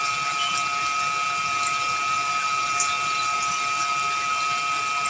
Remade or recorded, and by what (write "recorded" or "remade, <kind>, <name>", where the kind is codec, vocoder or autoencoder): recorded